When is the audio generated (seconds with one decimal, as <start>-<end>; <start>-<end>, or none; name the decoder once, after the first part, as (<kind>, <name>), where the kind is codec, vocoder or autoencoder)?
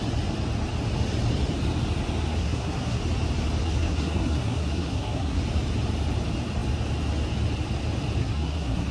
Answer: 2.3-3.0 (codec, SNAC); 3.6-5.4; 8.2-8.9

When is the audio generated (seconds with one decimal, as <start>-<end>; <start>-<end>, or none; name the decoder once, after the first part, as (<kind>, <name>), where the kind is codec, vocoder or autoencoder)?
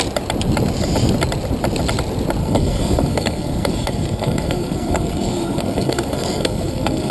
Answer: 2.4-7.1 (codec, SNAC)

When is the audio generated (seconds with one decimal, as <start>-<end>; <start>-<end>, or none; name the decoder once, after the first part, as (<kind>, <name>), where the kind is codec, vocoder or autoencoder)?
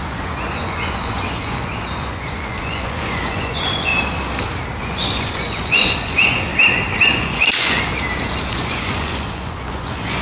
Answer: 0.0-3.9 (vocoder, Vocos); 4.8-6.5; 7.1-7.9; 8.5-10.2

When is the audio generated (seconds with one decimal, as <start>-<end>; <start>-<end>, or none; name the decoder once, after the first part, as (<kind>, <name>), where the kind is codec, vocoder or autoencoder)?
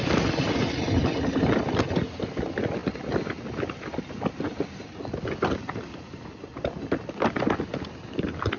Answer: none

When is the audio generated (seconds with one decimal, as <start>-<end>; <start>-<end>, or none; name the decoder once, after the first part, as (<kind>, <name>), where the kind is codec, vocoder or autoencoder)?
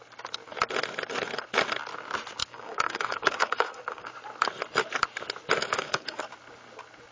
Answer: 2.4-4.1 (codec, DAC); 5.6-6.2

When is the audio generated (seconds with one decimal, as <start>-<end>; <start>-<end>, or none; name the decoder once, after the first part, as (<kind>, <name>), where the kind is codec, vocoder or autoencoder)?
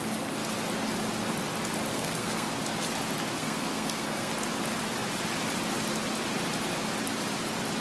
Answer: 1.9-2.5 (codec, SNAC); 3.4-4.3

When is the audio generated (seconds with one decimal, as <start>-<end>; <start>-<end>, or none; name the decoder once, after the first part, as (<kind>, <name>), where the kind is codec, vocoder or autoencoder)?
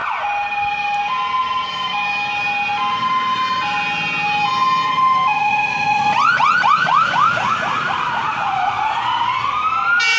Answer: 5.3-9.5 (vocoder, Vocos)